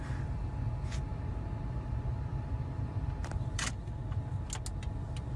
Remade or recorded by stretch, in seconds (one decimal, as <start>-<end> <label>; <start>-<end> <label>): 0.0-2.3 recorded; 2.3-3.7 remade; 3.7-5.4 recorded